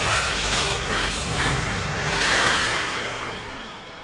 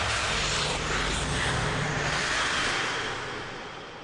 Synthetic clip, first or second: first